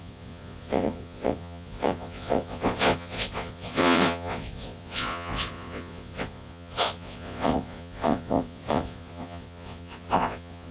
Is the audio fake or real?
fake